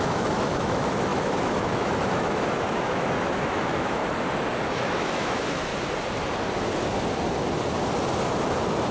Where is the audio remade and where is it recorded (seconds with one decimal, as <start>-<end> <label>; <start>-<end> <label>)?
0.0-4.0 remade; 4.0-4.7 recorded; 4.7-5.7 remade; 5.7-8.9 recorded